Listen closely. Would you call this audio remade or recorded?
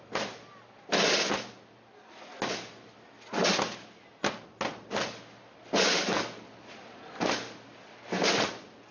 recorded